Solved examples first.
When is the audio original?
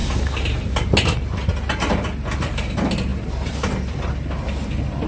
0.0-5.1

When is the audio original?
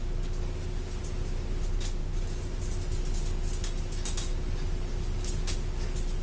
0.0-6.2